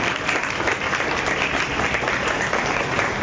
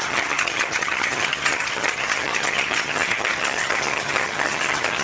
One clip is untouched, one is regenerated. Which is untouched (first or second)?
first